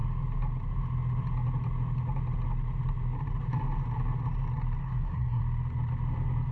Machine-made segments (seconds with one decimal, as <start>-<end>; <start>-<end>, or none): 4.8-5.4